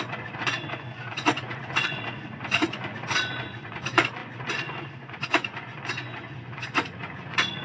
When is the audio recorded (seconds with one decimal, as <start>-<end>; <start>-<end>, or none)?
none